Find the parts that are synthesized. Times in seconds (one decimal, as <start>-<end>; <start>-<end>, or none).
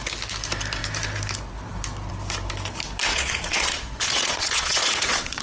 3.1-5.4